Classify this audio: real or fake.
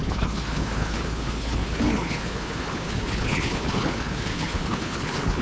fake